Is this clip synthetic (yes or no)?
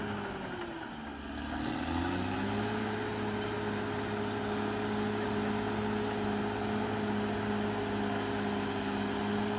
no